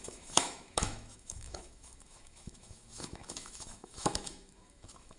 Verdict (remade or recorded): remade